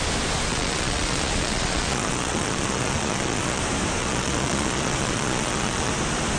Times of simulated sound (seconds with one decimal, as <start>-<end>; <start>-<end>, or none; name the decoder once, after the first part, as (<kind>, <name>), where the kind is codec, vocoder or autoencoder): 0.5-3.6 (vocoder, Vocos); 4.0-5.9